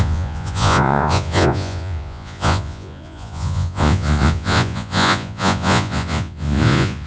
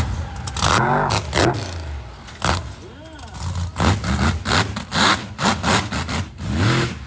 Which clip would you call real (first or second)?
second